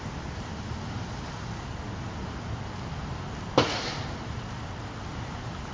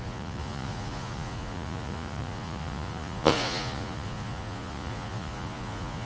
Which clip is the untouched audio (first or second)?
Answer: first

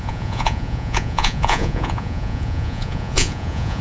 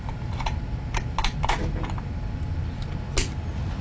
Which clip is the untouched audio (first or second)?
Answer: second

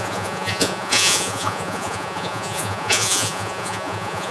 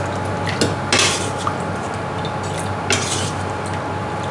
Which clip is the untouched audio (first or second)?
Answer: second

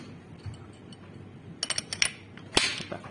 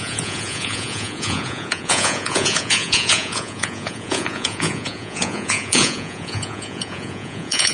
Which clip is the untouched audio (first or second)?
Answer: first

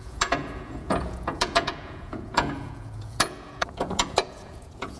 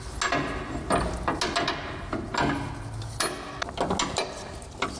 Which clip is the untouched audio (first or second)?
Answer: second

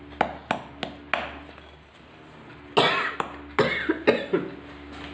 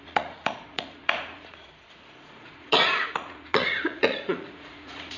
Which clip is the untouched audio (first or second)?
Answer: first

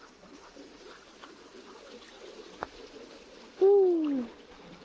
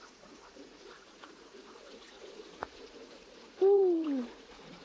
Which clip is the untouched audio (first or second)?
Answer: first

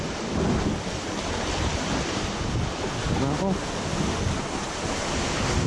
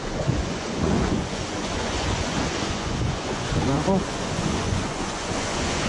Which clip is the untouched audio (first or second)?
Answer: first